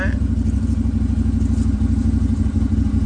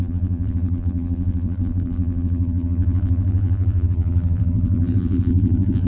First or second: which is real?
first